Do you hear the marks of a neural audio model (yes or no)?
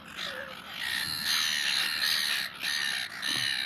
no